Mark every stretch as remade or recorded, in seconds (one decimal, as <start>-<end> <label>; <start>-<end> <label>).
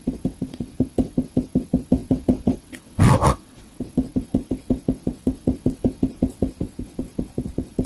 0.0-7.9 remade